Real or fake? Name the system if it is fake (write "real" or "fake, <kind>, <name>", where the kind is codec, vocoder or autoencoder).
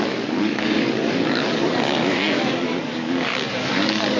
fake, codec, DAC